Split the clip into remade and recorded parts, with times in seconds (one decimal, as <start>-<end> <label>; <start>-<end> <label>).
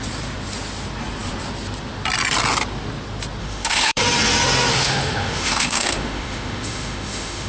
0.0-3.4 recorded; 3.4-4.0 remade; 4.0-4.7 recorded; 4.7-7.5 remade